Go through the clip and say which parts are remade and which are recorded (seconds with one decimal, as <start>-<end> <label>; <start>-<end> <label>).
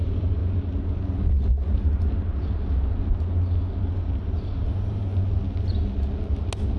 0.0-0.4 remade; 0.4-3.8 recorded; 3.8-5.1 remade; 5.1-6.8 recorded